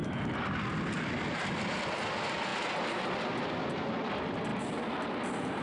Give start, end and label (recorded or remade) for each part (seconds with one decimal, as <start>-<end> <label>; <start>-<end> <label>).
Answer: 0.0-5.6 recorded